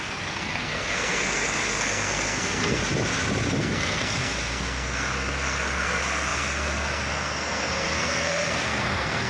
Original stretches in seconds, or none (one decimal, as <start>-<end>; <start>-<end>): 2.8-3.6